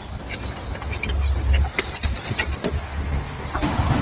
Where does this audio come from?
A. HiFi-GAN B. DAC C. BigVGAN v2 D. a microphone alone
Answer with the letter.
D